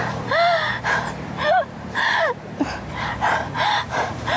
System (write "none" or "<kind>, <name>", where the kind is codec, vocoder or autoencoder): vocoder, BigVGAN v2